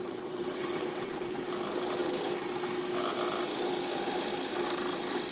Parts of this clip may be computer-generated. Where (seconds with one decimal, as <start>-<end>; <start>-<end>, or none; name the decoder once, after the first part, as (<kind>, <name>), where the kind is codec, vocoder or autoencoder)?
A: 0.0-1.4 (vocoder, WaveNeXt)